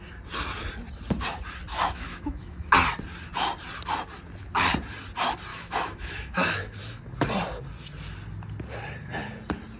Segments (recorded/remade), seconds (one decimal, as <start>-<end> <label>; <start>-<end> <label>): 0.0-1.7 recorded; 1.7-2.7 remade; 2.7-5.5 recorded; 5.5-7.0 remade; 7.0-9.8 recorded